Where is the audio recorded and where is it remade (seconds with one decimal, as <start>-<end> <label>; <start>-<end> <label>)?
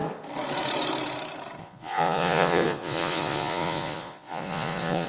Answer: 0.0-1.6 recorded; 1.6-5.1 remade